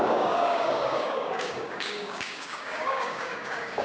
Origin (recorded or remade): remade